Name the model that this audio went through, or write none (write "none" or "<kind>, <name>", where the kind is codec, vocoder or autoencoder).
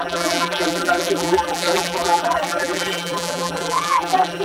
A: vocoder, BigVGAN v2